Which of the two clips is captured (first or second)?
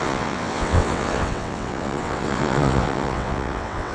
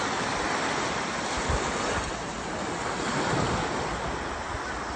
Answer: second